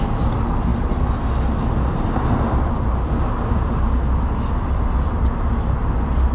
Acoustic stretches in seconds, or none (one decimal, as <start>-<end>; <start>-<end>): 0.0-6.3